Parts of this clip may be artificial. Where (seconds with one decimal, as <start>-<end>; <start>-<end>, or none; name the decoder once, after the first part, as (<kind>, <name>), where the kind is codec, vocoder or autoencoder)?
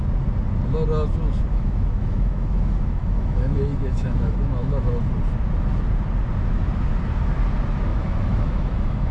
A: 1.5-4.9 (autoencoder, DAC-VAE); 7.9-9.1